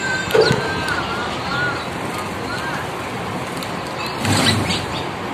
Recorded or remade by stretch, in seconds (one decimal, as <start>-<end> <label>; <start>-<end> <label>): 0.0-5.3 recorded